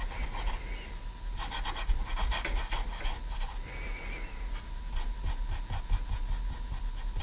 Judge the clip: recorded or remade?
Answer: recorded